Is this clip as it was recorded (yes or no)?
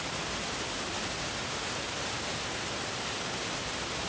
yes